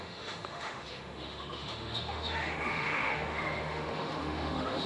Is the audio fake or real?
fake